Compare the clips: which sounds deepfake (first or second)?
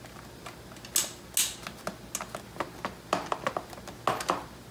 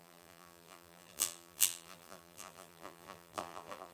second